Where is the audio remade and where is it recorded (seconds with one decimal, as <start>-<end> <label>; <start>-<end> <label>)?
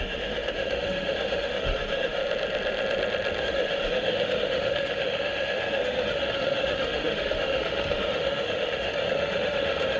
0.0-2.2 remade; 2.2-3.4 recorded; 3.4-10.0 remade